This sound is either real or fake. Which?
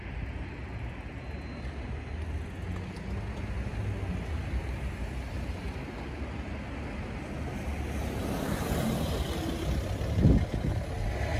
real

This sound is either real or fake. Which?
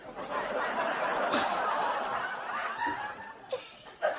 fake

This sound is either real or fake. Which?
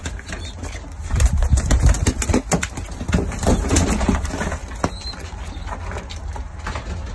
real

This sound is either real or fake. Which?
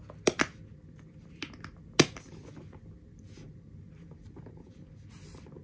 real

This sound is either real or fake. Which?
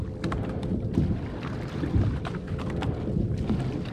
fake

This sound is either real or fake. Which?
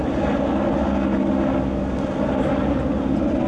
real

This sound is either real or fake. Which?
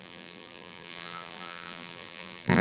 fake